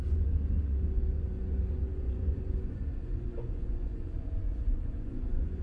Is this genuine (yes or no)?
no